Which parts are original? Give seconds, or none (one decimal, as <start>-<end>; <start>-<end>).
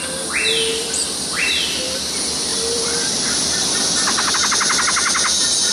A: 0.0-0.7; 2.0-2.5; 4.3-5.7